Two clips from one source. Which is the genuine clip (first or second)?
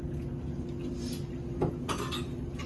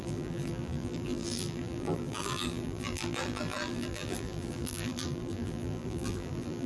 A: first